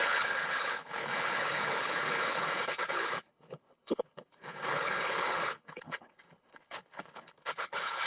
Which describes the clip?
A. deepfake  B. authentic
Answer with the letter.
A